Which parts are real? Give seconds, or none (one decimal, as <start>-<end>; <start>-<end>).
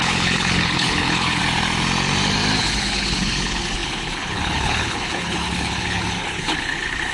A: 1.4-2.6